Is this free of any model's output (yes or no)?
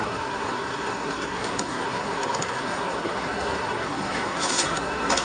no